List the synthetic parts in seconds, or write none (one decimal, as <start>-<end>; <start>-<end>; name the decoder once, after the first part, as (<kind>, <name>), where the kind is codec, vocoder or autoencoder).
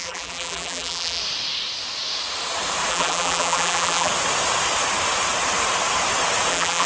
0.0-1.2 (vocoder, BigVGAN v2); 2.9-4.1; 6.5-6.9